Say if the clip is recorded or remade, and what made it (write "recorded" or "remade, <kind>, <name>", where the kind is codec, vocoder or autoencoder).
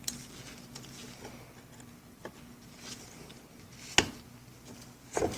recorded